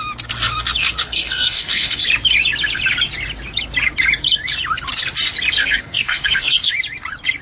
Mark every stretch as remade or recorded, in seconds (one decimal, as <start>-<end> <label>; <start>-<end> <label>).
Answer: 0.0-0.8 recorded; 0.8-2.0 remade; 2.0-5.6 recorded; 5.6-6.7 remade; 6.7-7.4 recorded